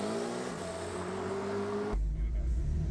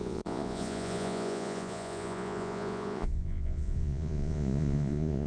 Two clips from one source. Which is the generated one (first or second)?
second